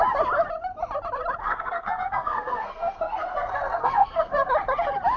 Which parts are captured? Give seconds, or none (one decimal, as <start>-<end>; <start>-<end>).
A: 0.0-1.4; 4.5-5.2